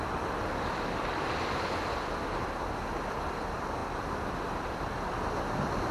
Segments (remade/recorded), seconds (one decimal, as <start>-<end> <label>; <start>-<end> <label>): 0.0-5.9 recorded